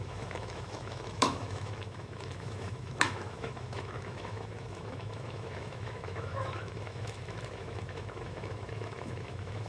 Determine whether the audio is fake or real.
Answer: fake